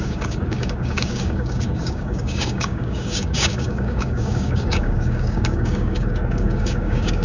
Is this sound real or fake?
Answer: fake